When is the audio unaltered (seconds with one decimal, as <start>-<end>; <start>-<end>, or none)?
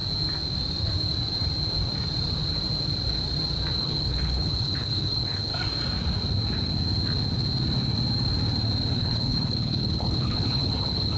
0.0-3.8; 5.5-8.9